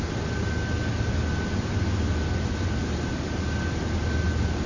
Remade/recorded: recorded